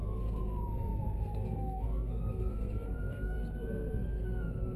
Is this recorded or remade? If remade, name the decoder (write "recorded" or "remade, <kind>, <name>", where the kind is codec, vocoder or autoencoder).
remade, codec, SNAC